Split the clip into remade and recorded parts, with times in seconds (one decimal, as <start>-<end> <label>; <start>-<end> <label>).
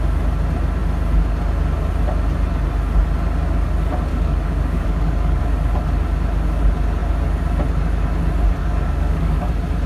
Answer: 0.0-4.1 recorded; 4.1-5.4 remade; 5.4-8.6 recorded; 8.6-9.5 remade; 9.5-9.9 recorded